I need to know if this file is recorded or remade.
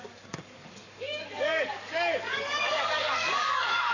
remade